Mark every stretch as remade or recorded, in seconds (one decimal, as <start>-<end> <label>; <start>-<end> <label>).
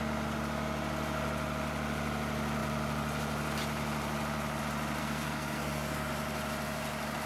0.0-5.0 recorded; 5.0-6.1 remade; 6.1-7.3 recorded